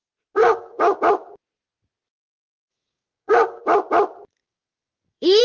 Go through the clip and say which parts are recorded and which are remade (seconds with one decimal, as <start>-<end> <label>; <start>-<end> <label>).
0.0-0.4 recorded; 0.4-1.0 remade; 1.0-2.3 recorded; 2.3-3.6 remade; 3.6-4.4 recorded; 4.4-5.4 remade

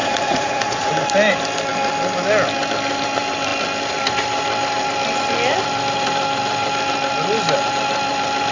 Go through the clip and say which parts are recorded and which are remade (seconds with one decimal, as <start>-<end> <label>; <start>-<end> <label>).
0.0-0.9 remade; 0.9-8.5 recorded

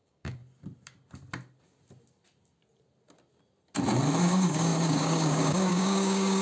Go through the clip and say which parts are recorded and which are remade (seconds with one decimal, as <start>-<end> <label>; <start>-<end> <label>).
0.0-0.4 remade; 0.4-4.2 recorded; 4.2-6.4 remade

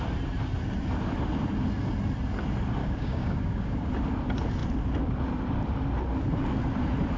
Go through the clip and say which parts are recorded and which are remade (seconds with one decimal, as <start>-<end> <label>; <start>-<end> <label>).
0.0-2.8 recorded; 2.8-3.9 remade; 3.9-7.2 recorded

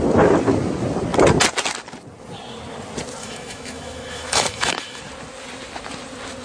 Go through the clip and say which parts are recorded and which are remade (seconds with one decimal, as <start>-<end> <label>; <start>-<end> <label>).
0.0-3.2 recorded; 3.2-5.0 remade; 5.0-6.4 recorded